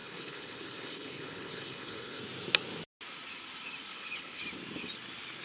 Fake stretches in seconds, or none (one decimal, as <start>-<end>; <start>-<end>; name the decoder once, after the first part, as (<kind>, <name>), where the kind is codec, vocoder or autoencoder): 0.0-2.2 (codec, HILCodec); 3.9-4.4